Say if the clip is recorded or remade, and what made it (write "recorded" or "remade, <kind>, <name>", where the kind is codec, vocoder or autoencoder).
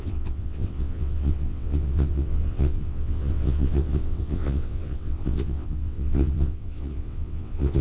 remade, vocoder, WaveNeXt